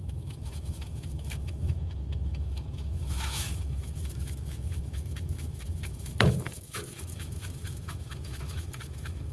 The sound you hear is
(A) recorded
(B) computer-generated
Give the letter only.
B